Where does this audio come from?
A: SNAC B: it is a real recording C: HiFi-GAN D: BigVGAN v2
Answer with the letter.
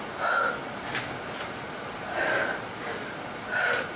B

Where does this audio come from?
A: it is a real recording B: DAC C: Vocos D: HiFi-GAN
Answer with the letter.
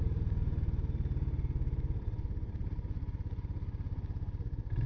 A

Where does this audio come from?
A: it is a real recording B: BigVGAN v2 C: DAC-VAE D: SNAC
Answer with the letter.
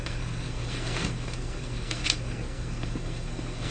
D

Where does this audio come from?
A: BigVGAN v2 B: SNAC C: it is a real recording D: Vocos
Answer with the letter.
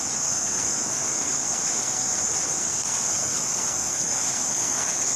B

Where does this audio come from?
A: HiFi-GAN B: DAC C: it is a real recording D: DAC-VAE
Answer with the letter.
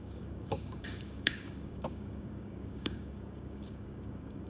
B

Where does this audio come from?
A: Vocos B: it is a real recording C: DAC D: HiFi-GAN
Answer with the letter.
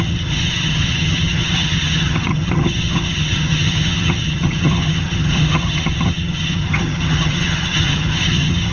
D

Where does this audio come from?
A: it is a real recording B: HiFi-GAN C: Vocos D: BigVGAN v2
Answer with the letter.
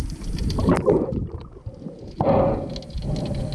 A